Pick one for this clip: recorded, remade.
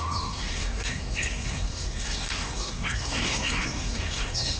remade